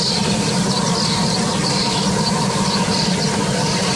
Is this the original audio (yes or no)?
yes